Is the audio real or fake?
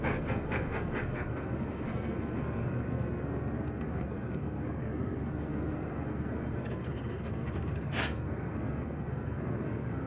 fake